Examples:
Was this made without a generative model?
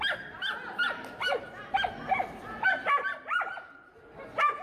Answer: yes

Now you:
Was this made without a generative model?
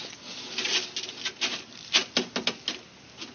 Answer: yes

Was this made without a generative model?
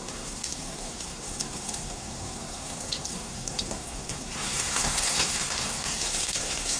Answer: no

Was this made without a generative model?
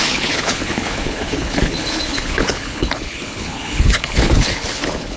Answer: no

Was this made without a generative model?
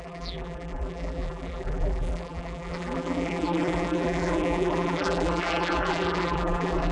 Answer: no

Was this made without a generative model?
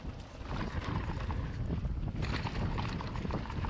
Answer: yes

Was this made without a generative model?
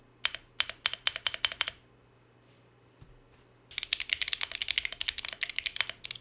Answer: yes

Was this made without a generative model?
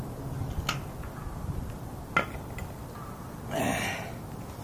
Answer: yes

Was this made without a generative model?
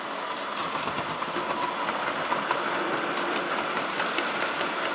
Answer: yes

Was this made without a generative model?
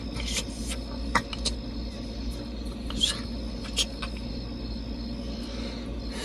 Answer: yes